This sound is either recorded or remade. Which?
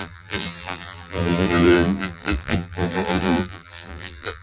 remade